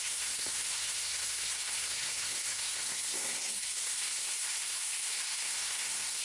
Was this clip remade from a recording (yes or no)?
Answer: yes